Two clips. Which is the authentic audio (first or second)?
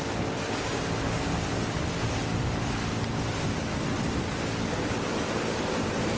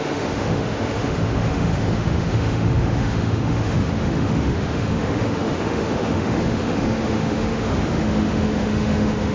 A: first